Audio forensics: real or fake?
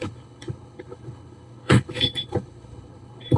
fake